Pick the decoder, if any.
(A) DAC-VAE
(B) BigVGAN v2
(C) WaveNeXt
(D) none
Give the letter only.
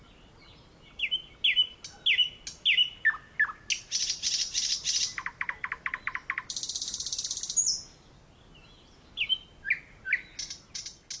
D